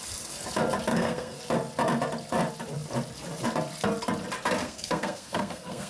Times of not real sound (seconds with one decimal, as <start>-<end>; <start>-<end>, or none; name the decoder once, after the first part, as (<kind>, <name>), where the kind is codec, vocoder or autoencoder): 0.9-1.4 (codec, SNAC); 4.6-5.9